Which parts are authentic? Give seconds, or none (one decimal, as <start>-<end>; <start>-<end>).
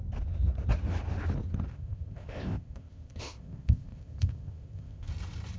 0.0-1.7; 5.1-5.6